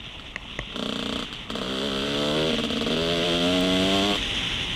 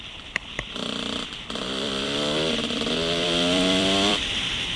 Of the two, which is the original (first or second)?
first